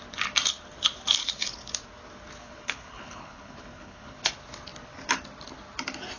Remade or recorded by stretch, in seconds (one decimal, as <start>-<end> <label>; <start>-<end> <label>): 0.0-1.2 recorded; 1.2-1.7 remade; 1.7-2.4 recorded; 2.4-4.3 remade; 4.3-6.2 recorded